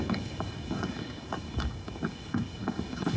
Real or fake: fake